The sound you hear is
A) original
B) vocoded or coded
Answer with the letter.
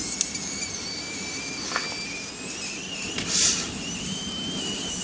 A